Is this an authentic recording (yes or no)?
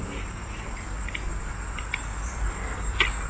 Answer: yes